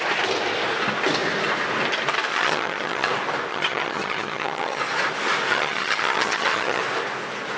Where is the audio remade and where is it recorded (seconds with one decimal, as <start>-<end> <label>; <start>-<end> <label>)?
0.0-2.3 recorded; 2.3-3.1 remade; 3.1-3.5 recorded; 3.5-4.8 remade; 4.8-5.5 recorded; 5.5-6.8 remade; 6.8-7.6 recorded